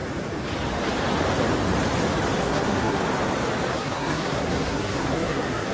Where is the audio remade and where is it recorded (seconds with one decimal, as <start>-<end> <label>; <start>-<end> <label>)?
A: 0.0-2.4 recorded; 2.4-3.0 remade; 3.0-3.7 recorded; 3.7-5.7 remade